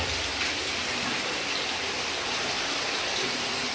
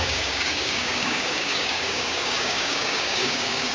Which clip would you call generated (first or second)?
second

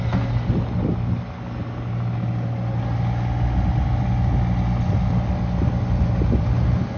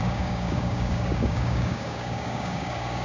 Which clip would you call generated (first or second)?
second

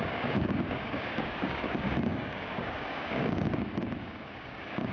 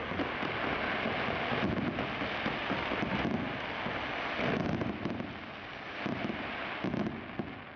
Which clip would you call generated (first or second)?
first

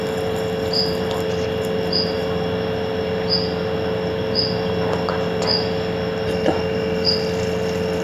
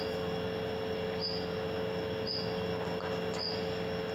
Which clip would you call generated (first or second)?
first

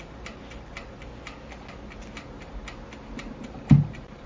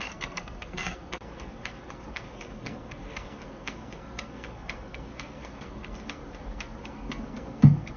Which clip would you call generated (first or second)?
second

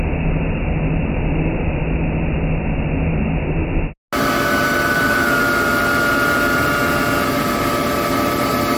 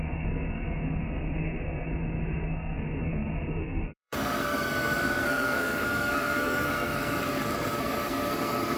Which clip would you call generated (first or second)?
second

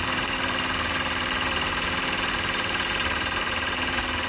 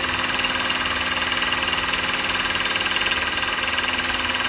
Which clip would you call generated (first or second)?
first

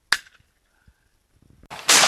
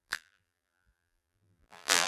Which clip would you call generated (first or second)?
second